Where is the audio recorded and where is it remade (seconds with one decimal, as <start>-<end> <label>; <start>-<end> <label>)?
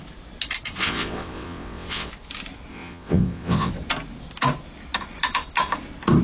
0.0-0.8 recorded; 0.8-2.1 remade; 2.1-2.7 recorded; 2.7-3.7 remade; 3.7-6.2 recorded